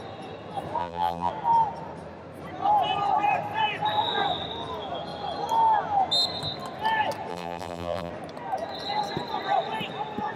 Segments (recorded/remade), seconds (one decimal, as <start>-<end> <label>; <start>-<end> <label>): 0.0-0.8 recorded; 0.8-1.3 remade; 1.3-7.3 recorded; 7.3-8.1 remade; 8.1-10.4 recorded